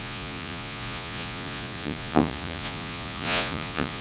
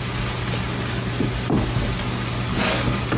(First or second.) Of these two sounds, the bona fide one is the second